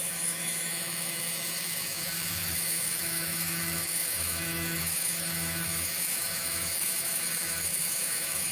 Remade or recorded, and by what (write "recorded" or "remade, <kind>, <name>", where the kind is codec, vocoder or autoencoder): remade, autoencoder, DAC-VAE